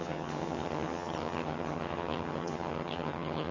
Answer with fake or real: fake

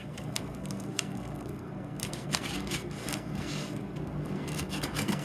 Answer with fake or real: fake